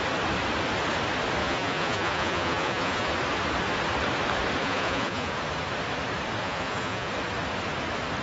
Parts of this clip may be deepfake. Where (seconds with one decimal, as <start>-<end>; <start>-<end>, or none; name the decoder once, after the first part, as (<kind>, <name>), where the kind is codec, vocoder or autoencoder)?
1.4-3.1 (vocoder, Vocos); 4.6-5.4; 6.4-7.1